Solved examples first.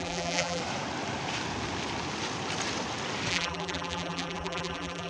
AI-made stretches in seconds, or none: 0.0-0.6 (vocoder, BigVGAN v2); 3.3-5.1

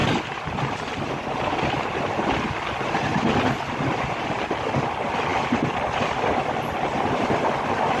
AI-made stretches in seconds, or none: 4.8-5.3 (vocoder, BigVGAN v2); 6.2-8.0

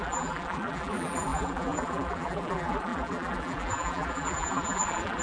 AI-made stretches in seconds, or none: 0.0-5.2 (vocoder, BigVGAN v2)

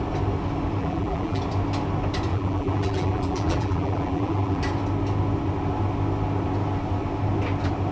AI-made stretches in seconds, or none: 0.8-1.4 (vocoder, BigVGAN v2); 2.3-4.6